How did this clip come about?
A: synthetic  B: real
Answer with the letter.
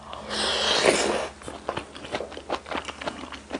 B